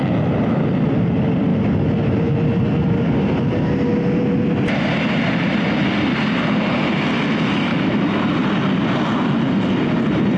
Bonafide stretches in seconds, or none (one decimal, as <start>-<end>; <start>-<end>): 0.0-7.7; 8.2-10.4